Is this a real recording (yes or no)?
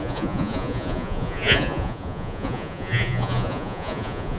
no